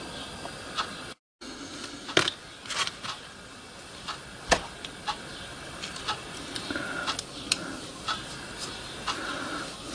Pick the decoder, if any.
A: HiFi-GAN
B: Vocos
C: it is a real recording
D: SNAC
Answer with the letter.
C